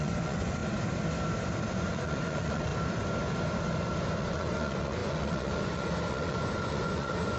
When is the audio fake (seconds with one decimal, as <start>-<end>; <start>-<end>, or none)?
0.0-0.6; 1.7-2.7; 4.2-7.4